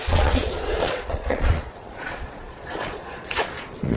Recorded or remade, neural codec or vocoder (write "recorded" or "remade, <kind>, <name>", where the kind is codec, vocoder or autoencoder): remade, vocoder, Vocos